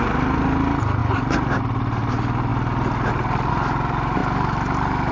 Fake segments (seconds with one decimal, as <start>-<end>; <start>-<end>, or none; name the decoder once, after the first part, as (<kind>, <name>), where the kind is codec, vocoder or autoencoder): none